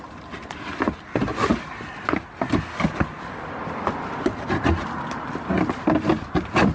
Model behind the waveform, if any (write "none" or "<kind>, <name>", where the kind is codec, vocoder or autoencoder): none